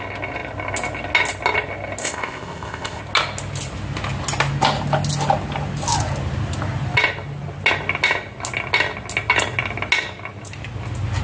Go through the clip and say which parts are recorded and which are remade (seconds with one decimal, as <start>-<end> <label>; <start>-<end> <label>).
0.0-2.0 recorded; 2.0-3.0 remade; 3.0-11.2 recorded